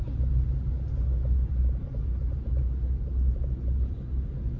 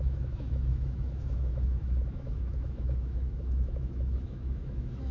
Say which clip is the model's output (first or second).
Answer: second